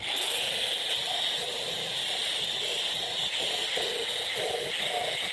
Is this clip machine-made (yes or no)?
no